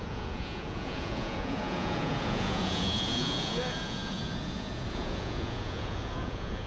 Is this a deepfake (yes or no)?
yes